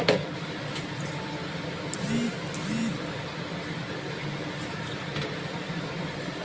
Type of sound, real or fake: real